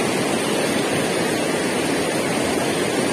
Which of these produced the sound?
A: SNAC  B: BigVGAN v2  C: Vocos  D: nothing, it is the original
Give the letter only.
D